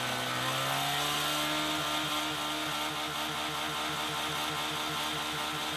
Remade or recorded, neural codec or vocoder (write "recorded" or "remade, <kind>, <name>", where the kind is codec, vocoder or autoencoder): recorded